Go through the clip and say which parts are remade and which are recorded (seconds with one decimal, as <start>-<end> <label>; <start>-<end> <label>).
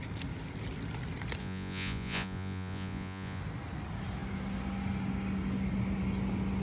0.0-1.4 recorded; 1.4-3.4 remade; 3.4-6.6 recorded